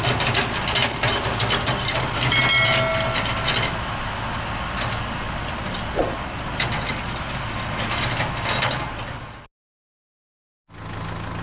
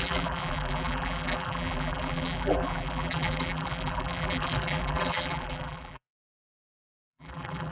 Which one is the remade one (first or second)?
second